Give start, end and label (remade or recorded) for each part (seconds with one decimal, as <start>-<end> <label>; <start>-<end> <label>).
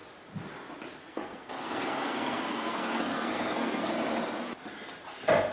0.0-1.0 recorded; 1.0-3.9 remade; 3.9-5.5 recorded